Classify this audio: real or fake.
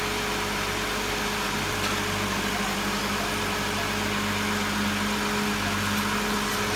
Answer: real